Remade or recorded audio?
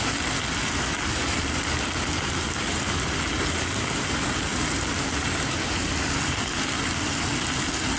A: recorded